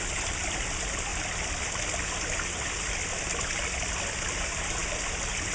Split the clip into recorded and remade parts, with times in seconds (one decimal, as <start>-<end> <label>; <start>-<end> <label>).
0.0-5.5 recorded